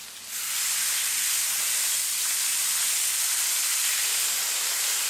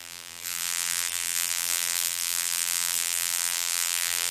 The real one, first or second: first